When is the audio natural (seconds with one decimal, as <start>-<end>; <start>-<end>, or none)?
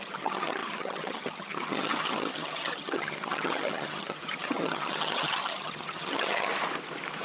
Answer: 6.5-7.2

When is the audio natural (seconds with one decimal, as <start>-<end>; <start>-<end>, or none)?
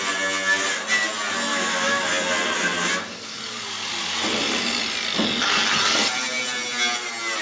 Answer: 0.0-1.5; 2.1-7.4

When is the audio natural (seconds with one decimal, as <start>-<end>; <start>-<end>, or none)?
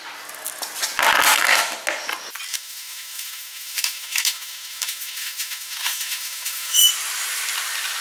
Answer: 0.0-2.5; 6.8-8.0